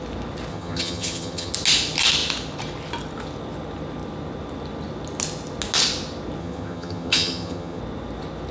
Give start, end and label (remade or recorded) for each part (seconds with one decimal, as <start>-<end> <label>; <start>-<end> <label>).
0.0-0.5 recorded; 0.5-1.5 remade; 1.5-6.4 recorded; 6.4-7.8 remade; 7.8-8.5 recorded